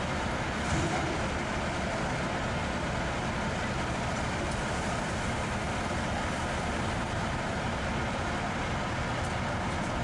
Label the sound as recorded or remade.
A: remade